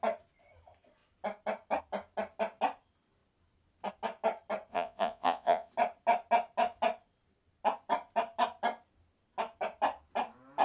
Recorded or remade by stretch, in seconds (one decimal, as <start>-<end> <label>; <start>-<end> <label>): 0.0-4.7 recorded; 4.7-5.7 remade; 5.7-10.6 recorded

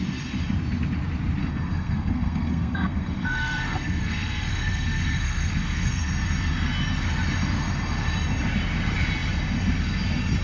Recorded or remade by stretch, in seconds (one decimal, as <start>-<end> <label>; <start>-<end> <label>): 0.0-1.4 recorded; 1.4-6.1 remade; 6.1-10.4 recorded

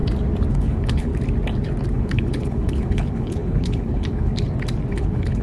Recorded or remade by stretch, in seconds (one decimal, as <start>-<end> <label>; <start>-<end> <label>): 0.0-0.5 recorded; 0.5-1.1 remade; 1.1-1.9 recorded; 1.9-4.3 remade; 4.3-4.9 recorded; 4.9-5.4 remade